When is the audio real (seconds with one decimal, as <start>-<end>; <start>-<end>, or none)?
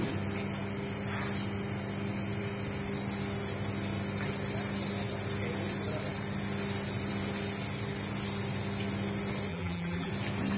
0.0-9.5; 10.1-10.6